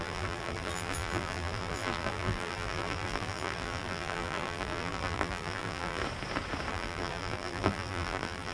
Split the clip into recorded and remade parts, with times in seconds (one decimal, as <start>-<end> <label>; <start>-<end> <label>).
0.0-6.0 remade; 6.0-6.7 recorded; 6.7-8.5 remade